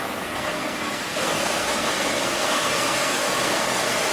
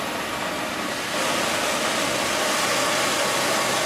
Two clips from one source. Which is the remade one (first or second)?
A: first